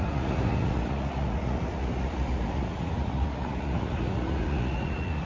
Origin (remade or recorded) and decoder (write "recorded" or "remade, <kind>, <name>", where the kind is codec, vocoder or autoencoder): remade, vocoder, Vocos